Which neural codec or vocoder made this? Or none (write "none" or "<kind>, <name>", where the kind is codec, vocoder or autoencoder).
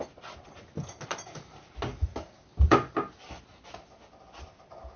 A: none